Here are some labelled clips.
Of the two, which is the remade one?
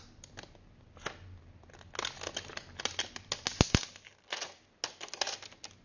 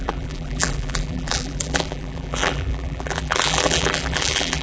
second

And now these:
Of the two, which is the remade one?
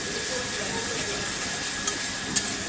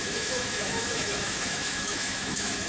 second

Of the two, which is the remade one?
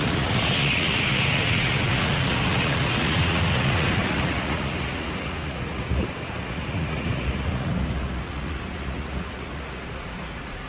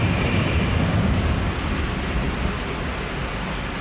first